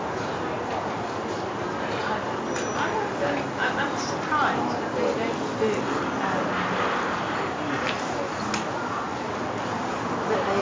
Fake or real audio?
real